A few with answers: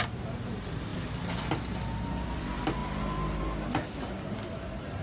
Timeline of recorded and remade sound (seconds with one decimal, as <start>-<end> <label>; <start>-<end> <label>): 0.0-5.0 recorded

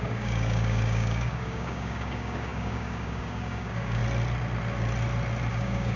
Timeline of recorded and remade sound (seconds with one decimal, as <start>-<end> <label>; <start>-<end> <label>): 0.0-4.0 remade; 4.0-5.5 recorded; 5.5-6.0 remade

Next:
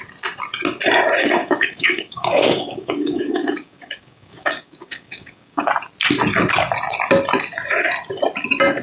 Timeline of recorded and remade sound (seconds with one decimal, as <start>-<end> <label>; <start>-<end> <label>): 0.0-1.4 recorded; 1.4-5.7 remade; 5.7-8.8 recorded